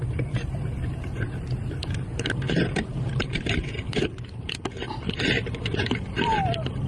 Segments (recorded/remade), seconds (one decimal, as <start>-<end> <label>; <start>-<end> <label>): 0.0-0.9 remade; 0.9-1.8 recorded; 1.8-5.9 remade; 5.9-6.9 recorded